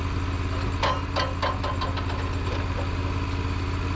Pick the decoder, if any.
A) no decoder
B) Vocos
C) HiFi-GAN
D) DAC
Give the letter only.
A